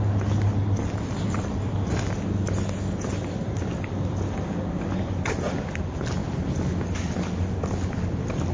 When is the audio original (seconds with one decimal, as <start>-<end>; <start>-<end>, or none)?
0.0-8.5